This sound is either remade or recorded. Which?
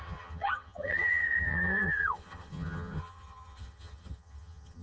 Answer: remade